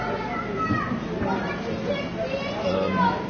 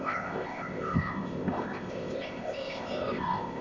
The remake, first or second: second